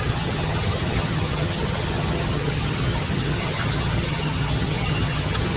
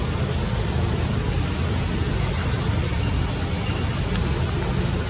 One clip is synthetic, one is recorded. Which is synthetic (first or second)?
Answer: first